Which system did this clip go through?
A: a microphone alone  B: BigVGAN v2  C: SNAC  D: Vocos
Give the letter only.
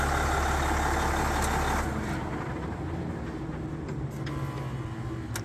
A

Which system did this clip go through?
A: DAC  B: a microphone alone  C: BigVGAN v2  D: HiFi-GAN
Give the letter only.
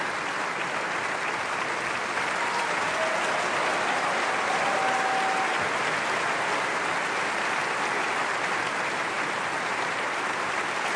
B